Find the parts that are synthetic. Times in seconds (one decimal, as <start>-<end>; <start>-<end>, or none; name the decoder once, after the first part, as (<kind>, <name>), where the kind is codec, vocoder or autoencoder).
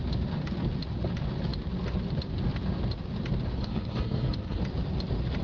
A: 3.6-4.6 (codec, SNAC)